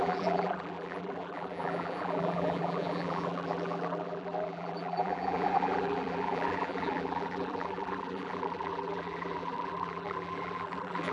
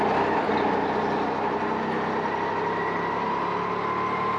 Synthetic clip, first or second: first